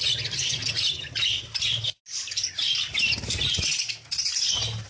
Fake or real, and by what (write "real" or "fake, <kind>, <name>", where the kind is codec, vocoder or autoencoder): real